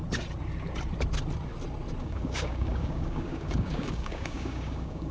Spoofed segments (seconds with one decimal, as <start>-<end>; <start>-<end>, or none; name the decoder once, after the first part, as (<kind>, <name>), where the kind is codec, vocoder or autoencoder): 2.0-5.1 (codec, DAC)